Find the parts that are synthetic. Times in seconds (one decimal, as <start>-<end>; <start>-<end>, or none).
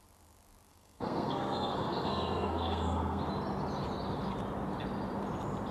0.7-3.2